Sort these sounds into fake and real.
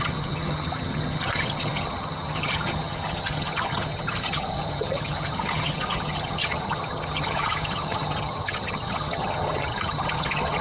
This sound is fake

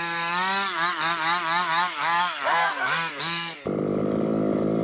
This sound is fake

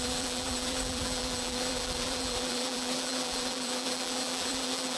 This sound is fake